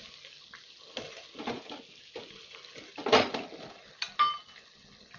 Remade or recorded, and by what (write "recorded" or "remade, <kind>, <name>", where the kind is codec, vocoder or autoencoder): recorded